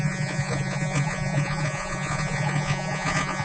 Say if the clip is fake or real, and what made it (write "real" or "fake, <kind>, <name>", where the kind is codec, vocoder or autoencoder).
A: fake, vocoder, Vocos